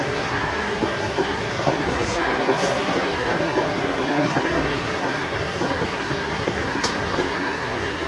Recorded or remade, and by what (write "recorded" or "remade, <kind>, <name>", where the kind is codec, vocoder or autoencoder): remade, codec, SNAC